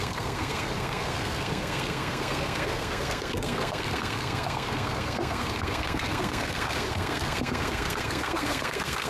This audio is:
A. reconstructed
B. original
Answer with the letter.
A